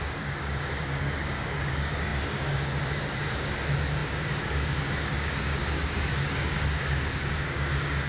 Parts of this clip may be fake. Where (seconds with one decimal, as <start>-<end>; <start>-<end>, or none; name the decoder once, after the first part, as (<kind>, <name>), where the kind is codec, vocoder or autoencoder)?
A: 0.0-8.1 (codec, DAC)